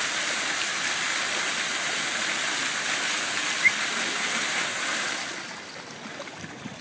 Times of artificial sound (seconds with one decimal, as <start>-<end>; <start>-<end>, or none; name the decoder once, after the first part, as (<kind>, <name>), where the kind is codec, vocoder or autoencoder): 0.0-2.6 (vocoder, BigVGAN v2); 3.4-6.8